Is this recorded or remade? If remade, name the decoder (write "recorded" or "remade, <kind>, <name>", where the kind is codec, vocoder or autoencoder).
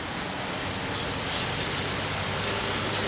recorded